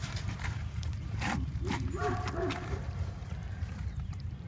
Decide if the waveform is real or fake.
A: fake